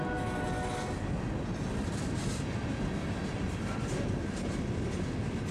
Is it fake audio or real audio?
real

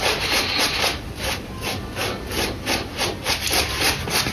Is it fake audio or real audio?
real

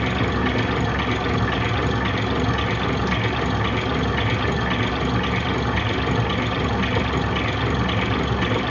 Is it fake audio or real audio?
real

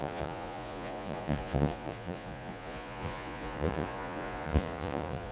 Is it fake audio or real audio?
fake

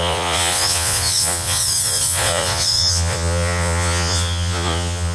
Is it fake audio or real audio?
fake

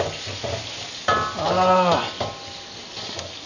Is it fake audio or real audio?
real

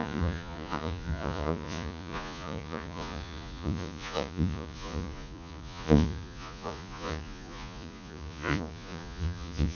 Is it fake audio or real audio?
fake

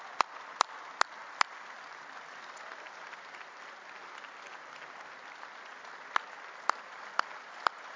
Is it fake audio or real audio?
real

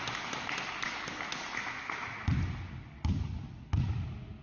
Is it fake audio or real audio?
real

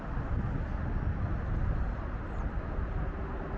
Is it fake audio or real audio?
real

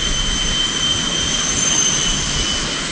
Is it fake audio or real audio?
real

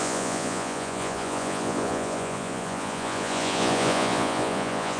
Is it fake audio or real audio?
fake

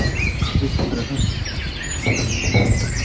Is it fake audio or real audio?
real